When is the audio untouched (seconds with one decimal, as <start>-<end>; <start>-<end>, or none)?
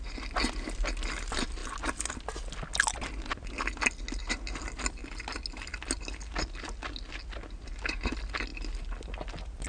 0.0-9.7